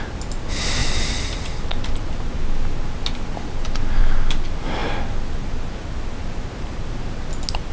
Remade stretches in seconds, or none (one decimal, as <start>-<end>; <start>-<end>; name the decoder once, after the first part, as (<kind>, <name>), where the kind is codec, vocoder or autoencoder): none